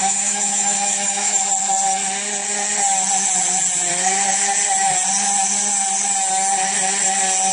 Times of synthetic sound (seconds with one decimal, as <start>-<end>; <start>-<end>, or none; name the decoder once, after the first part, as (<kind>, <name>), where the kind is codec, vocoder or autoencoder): 0.0-1.4 (autoencoder, DAC-VAE)